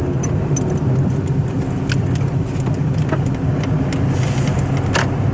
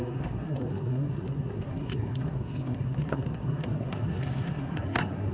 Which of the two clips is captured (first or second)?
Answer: first